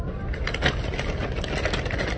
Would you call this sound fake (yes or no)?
no